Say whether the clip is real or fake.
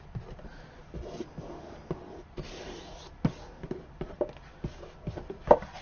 real